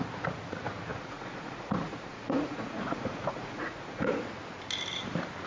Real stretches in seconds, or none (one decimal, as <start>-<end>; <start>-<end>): 0.0-0.9; 4.2-5.5